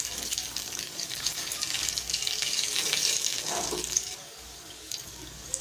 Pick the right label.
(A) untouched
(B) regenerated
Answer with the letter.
B